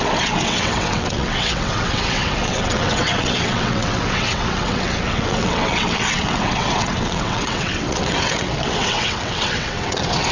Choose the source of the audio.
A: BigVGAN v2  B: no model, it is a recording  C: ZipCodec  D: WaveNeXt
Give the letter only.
D